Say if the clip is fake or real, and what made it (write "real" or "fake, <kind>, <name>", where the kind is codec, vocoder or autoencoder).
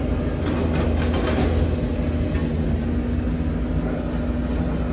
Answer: real